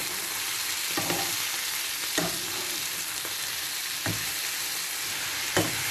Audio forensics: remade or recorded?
recorded